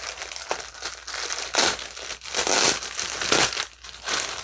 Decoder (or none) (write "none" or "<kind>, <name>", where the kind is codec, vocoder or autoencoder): none